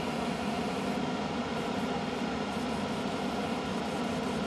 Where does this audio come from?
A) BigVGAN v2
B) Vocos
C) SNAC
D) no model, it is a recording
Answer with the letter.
D